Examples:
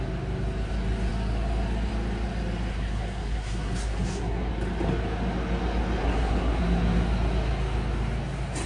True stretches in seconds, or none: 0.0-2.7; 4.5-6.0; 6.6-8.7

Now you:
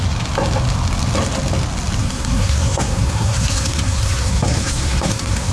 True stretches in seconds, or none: 0.0-2.0

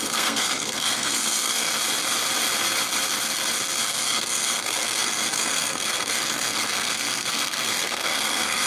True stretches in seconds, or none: 1.7-3.8